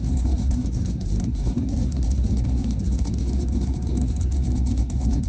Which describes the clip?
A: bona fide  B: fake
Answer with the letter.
B